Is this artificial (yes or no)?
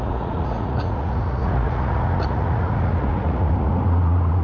yes